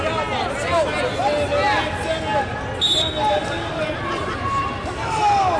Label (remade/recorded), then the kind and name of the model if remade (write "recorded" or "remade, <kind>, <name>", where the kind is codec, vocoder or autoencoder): recorded